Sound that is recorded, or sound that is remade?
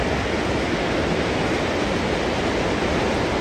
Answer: recorded